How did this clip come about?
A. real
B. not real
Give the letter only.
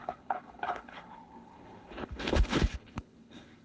B